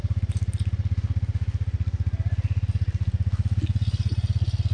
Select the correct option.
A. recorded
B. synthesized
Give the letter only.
A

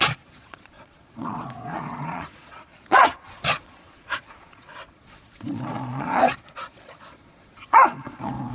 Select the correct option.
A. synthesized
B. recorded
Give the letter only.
A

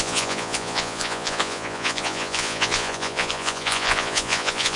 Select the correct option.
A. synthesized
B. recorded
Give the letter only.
A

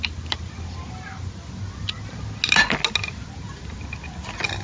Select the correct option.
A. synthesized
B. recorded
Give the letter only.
B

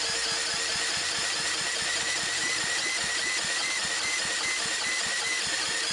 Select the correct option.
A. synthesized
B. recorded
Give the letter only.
B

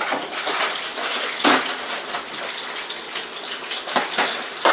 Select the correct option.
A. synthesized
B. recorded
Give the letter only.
B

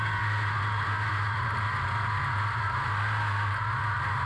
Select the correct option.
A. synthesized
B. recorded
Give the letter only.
B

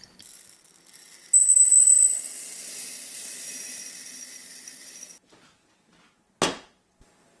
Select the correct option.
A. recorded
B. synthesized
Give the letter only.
A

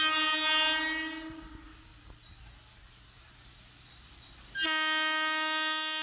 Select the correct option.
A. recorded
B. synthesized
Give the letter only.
A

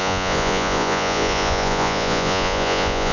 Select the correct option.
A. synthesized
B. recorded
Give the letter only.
A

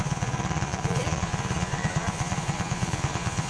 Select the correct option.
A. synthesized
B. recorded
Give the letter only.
A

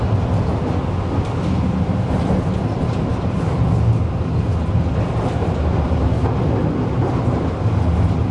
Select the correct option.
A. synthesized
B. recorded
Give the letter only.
B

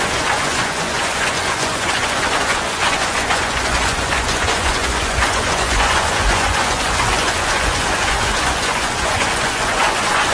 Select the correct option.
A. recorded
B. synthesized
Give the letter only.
B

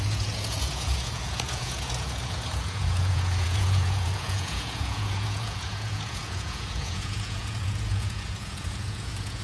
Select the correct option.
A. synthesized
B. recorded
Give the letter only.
A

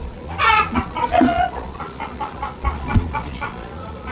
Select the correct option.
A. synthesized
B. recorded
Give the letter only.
A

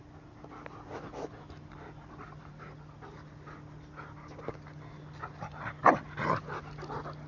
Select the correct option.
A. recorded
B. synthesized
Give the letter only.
A